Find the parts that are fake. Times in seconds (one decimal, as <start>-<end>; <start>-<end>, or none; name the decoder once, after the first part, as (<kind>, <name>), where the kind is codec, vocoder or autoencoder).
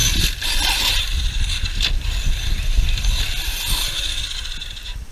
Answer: none